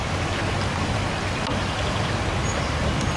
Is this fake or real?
real